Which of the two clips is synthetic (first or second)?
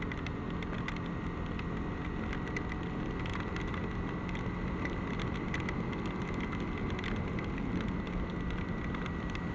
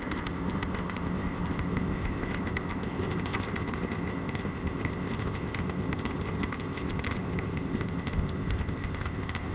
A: second